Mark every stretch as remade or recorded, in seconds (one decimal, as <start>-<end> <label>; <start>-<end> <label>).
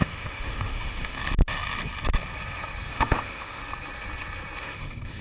0.0-1.2 remade; 1.2-2.9 recorded; 2.9-3.6 remade; 3.6-4.6 recorded; 4.6-5.2 remade